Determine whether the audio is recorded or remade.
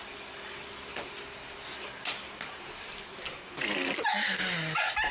recorded